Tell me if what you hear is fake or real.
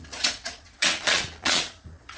fake